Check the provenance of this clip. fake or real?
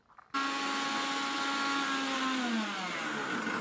real